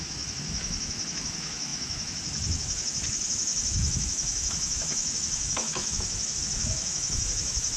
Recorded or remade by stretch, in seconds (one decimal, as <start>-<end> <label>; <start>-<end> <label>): 0.0-7.8 remade